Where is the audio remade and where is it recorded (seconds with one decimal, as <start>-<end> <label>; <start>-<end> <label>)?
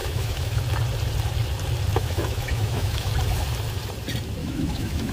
0.0-0.6 remade; 0.6-1.9 recorded; 1.9-3.1 remade; 3.1-4.4 recorded; 4.4-5.1 remade